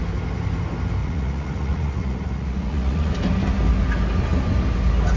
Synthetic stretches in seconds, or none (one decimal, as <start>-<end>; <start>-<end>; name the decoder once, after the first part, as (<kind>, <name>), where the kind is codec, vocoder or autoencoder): 1.0-3.1 (vocoder, Vocos)